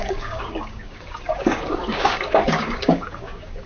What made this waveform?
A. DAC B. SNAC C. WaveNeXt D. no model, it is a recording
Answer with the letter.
A